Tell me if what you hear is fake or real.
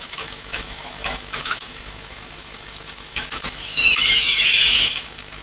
fake